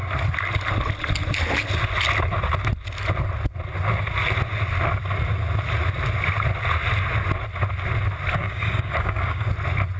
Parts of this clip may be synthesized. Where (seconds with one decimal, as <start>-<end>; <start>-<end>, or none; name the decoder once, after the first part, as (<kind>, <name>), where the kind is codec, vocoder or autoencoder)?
8.3-9.5 (codec, DAC)